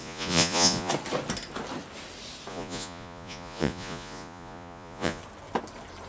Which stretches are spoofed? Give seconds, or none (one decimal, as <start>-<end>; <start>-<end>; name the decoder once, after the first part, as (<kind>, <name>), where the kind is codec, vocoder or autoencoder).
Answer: 0.0-0.9 (vocoder, Vocos); 2.5-5.2